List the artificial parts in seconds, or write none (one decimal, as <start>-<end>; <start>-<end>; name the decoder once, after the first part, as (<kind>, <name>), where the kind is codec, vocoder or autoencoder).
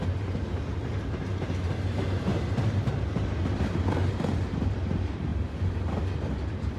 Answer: 2.3-4.1 (vocoder, BigVGAN v2); 5.3-6.8